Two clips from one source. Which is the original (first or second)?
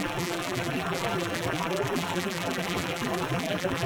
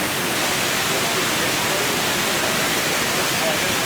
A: second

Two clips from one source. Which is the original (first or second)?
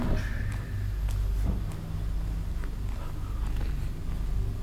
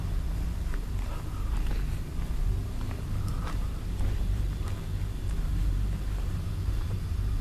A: first